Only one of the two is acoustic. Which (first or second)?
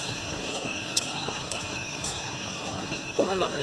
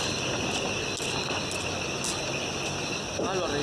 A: second